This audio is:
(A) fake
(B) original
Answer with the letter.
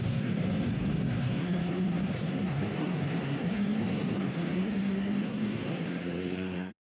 A